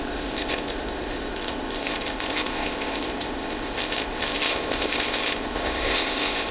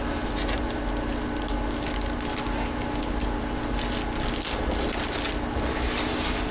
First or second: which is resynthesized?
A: first